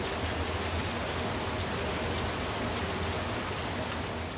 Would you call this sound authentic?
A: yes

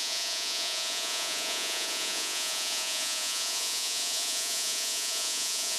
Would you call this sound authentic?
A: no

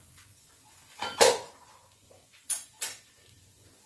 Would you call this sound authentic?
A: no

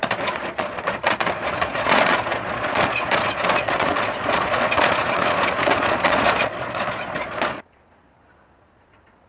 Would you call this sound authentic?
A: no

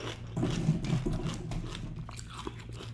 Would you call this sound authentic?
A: yes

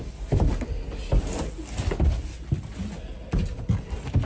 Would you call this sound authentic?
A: yes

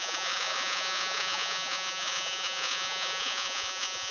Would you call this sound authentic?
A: no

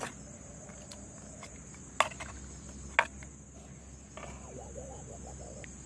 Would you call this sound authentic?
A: yes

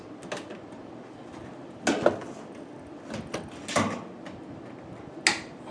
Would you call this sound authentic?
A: yes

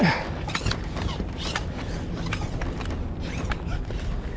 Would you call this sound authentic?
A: yes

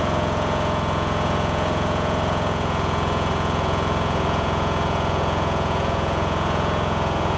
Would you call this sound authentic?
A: no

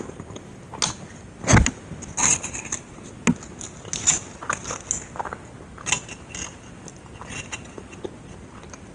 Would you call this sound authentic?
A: yes